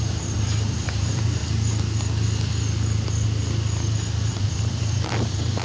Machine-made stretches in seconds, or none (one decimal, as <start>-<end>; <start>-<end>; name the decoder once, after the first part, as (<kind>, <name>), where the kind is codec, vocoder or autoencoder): 0.0-1.4 (vocoder, BigVGAN v2); 4.3-5.6